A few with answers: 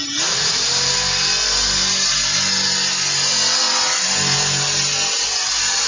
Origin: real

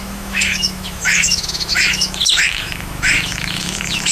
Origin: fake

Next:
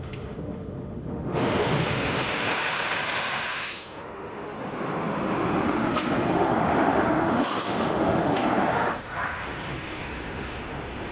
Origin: fake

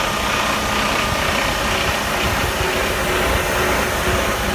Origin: real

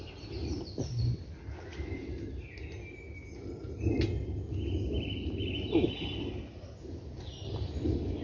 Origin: real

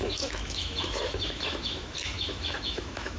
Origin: fake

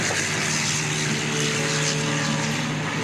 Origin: real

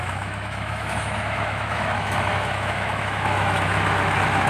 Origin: fake